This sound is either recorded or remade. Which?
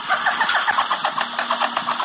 recorded